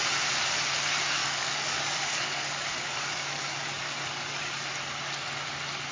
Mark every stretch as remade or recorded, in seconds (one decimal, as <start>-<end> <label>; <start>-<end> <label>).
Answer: 0.0-1.2 recorded; 1.2-4.7 remade; 4.7-5.9 recorded